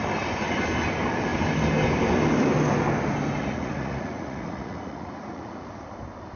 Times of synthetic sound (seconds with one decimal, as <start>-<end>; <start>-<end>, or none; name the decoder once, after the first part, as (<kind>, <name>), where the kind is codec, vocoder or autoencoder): 3.4-5.7 (vocoder, Vocos)